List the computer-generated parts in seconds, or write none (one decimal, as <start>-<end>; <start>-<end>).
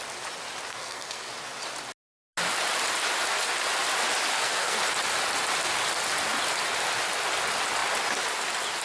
0.7-1.3; 4.3-4.8